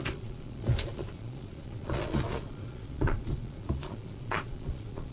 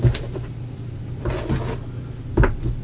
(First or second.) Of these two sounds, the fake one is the first